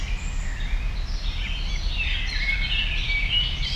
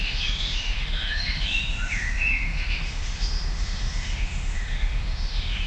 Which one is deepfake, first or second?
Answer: second